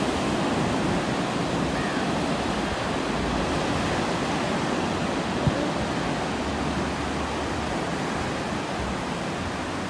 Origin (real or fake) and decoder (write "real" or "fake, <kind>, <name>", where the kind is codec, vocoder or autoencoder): real